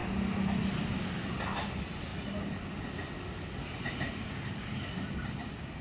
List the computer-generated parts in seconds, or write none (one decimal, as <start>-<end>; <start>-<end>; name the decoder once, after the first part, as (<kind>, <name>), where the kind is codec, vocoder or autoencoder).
none